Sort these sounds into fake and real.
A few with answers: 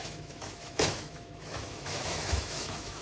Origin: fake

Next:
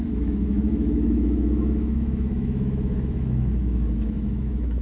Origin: fake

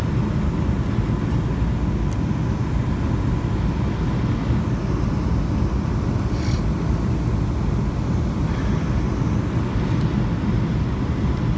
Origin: real